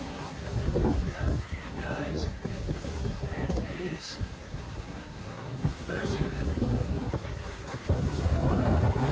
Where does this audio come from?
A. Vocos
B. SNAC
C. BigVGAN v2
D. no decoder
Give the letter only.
B